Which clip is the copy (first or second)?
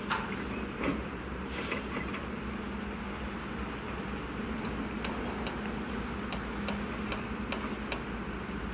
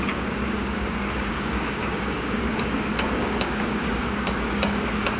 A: second